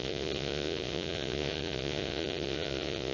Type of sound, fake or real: fake